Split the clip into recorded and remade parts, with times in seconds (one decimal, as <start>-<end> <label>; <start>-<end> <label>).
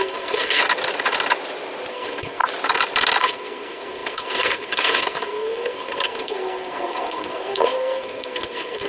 0.0-0.6 remade; 0.6-1.9 recorded; 1.9-2.4 remade; 2.4-3.2 recorded; 3.2-8.9 remade